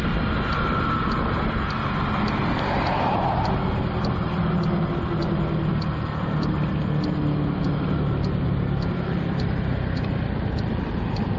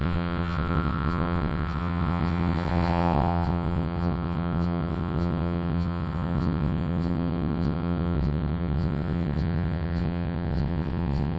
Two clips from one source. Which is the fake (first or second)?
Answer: second